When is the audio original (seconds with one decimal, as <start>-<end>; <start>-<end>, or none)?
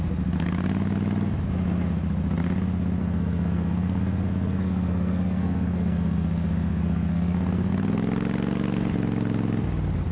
0.0-3.0; 7.7-10.1